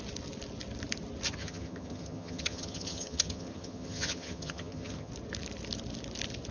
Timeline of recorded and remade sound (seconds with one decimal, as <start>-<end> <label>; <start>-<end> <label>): 0.0-1.4 recorded; 1.4-5.1 remade; 5.1-6.5 recorded